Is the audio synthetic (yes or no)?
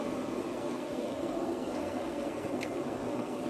yes